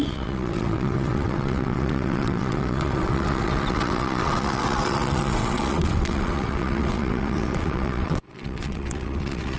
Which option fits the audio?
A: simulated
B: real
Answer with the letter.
A